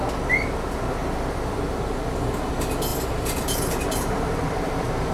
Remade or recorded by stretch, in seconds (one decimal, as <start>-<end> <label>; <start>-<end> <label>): 0.0-1.0 recorded; 1.0-2.5 remade; 2.5-2.9 recorded; 2.9-5.1 remade